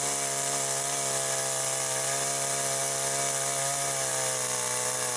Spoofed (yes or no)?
no